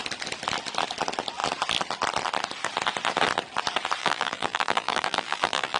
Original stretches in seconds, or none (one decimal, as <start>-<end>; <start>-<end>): 0.0-4.0